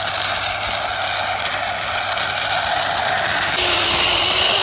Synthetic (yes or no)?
no